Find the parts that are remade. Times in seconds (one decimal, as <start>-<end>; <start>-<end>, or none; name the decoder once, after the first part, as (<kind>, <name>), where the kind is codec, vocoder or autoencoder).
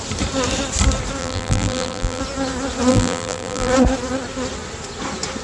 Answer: 1.2-2.2 (vocoder, BigVGAN v2); 2.9-3.7